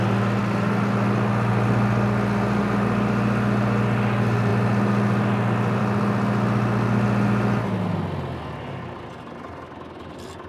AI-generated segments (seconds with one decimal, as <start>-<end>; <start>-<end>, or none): none